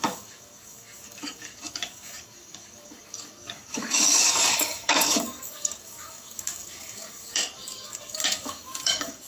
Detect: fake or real fake